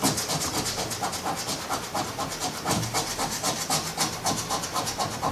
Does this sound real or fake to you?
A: real